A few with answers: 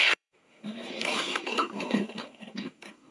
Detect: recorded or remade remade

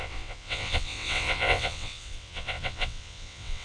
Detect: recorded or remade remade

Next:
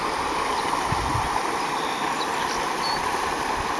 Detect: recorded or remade recorded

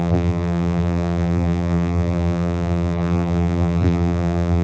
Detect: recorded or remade remade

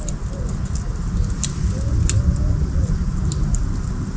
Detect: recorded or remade recorded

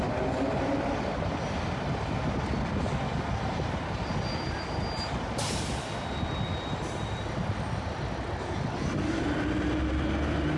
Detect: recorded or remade recorded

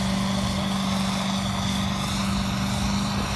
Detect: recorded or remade recorded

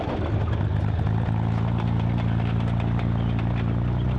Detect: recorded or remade recorded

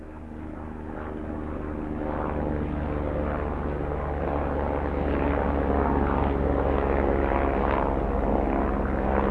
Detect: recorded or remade recorded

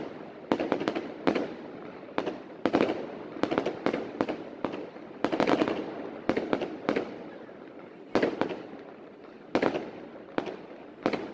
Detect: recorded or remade recorded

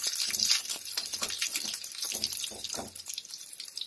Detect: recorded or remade recorded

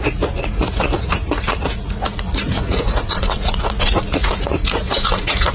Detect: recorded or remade remade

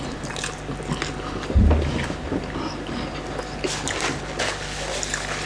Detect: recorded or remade recorded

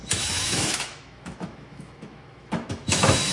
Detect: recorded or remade remade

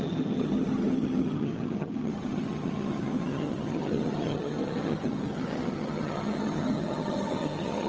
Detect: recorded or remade remade